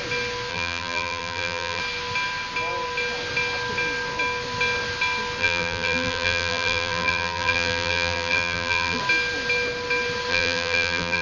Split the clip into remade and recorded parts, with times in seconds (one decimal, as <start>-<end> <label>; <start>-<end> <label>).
0.0-0.5 recorded; 0.5-1.8 remade; 1.8-5.4 recorded; 5.4-9.0 remade; 9.0-10.3 recorded; 10.3-11.2 remade